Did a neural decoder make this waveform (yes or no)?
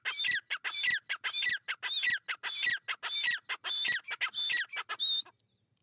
no